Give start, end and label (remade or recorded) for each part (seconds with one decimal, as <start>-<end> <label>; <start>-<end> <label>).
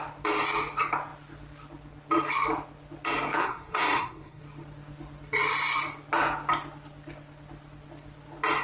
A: 0.0-3.4 recorded; 3.4-4.4 remade; 4.4-8.6 recorded